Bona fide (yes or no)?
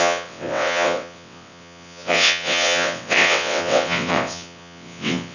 no